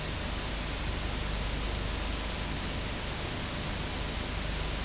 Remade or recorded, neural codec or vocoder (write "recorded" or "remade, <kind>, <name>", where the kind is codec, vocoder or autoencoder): recorded